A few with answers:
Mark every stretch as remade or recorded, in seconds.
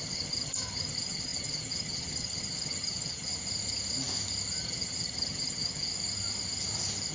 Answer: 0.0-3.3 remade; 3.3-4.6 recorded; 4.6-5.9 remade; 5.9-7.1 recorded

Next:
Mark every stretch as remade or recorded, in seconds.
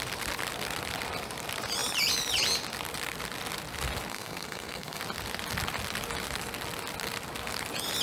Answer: 0.0-4.1 recorded; 4.1-5.0 remade; 5.0-8.0 recorded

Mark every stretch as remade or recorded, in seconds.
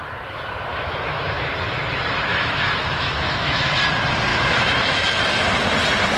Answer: 0.0-0.7 recorded; 0.7-1.2 remade; 1.2-2.3 recorded; 2.3-3.8 remade; 3.8-4.3 recorded; 4.3-5.2 remade; 5.2-6.2 recorded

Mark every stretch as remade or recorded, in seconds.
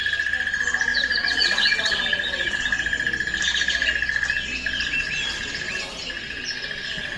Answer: 0.0-0.9 recorded; 0.9-2.6 remade; 2.6-7.2 recorded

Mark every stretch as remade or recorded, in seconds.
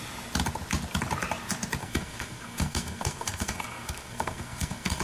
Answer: 0.0-1.8 recorded; 1.8-5.0 remade